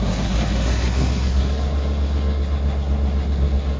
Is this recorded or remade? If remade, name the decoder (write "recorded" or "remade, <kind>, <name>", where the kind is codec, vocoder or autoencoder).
remade, codec, SNAC